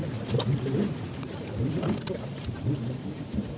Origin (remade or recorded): remade